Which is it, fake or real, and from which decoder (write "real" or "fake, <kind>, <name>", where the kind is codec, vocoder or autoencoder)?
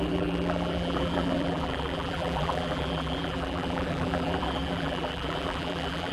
fake, vocoder, BigVGAN v2